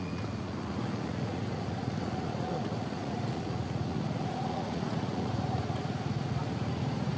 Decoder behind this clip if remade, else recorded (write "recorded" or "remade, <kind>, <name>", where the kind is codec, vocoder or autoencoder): remade, vocoder, Vocos